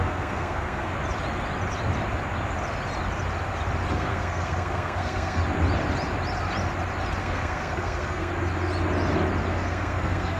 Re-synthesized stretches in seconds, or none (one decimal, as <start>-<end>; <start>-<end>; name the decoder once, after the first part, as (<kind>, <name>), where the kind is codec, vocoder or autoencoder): 0.0-0.9 (codec, SNAC); 3.9-5.4; 7.2-8.3; 9.5-10.4